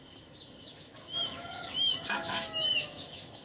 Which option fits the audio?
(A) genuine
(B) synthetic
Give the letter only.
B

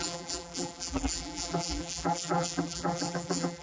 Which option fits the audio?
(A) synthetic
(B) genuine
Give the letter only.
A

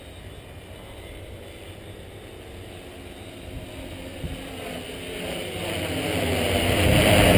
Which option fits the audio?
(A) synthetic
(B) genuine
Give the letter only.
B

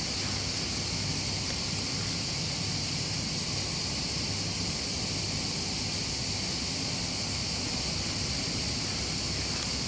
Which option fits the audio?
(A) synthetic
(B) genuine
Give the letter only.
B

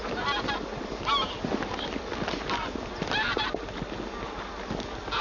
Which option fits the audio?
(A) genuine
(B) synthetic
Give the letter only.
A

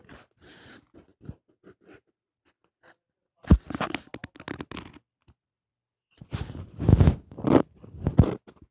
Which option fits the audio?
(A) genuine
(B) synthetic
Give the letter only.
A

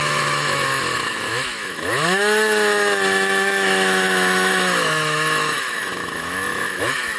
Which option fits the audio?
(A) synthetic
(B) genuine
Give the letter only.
A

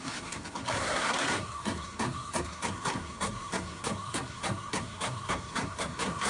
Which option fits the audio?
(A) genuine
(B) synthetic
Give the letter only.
B